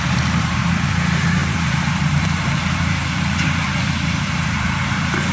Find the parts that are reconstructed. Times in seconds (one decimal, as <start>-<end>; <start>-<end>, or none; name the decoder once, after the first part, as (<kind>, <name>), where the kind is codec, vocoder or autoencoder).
0.0-5.3 (vocoder, BigVGAN v2)